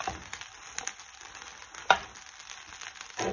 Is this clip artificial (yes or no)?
no